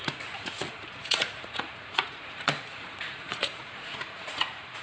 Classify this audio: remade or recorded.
remade